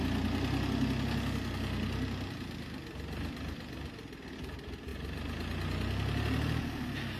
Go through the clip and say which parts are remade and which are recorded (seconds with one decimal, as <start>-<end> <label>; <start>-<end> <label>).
0.0-7.2 recorded